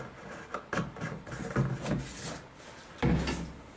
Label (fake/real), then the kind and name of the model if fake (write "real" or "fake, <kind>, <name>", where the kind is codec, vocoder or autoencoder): real